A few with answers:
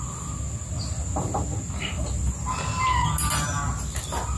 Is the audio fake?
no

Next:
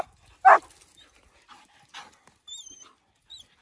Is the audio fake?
no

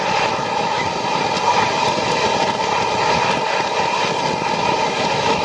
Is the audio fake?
no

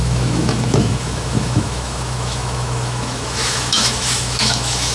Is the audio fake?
yes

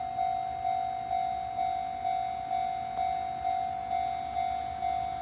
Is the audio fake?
no